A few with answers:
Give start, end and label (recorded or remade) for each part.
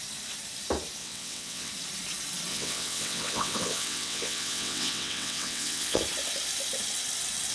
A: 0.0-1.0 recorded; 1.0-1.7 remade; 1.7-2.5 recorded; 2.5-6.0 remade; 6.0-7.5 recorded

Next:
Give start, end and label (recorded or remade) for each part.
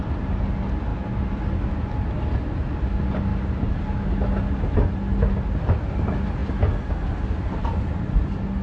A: 0.0-8.6 recorded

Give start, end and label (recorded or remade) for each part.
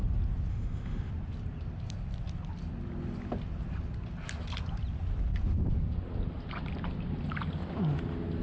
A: 0.0-0.5 recorded; 0.5-1.1 remade; 1.1-8.4 recorded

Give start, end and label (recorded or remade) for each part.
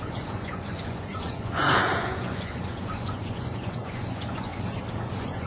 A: 0.0-4.5 remade; 4.5-5.1 recorded; 5.1-5.5 remade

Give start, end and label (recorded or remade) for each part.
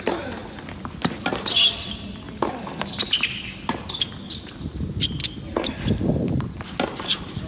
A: 0.0-7.5 recorded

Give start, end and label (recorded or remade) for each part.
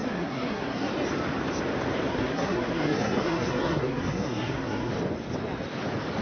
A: 0.0-0.9 remade; 0.9-2.1 recorded; 2.1-4.9 remade; 4.9-6.2 recorded